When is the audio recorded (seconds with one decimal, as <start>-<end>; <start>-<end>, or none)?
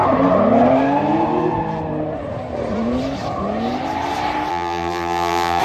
0.0-4.5